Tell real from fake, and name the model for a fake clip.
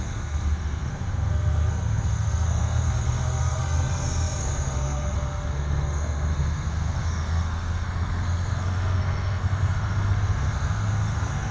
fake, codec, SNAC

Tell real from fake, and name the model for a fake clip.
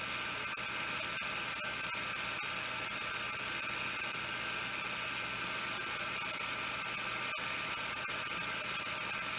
real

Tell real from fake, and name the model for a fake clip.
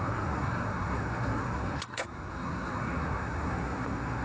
fake, codec, SNAC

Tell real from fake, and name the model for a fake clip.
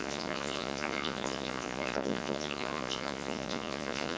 fake, vocoder, Vocos